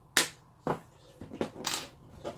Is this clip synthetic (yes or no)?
no